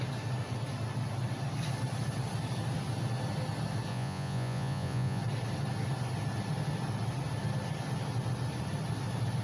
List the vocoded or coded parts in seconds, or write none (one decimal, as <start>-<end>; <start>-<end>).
3.9-5.2